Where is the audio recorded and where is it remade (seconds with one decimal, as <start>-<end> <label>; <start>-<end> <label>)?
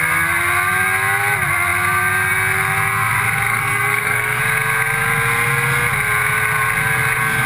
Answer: 0.0-3.5 recorded; 3.5-4.4 remade; 4.4-7.5 recorded